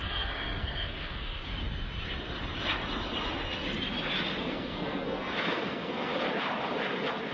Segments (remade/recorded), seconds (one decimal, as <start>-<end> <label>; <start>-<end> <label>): 0.0-1.5 remade; 1.5-4.4 recorded; 4.4-6.1 remade; 6.1-7.3 recorded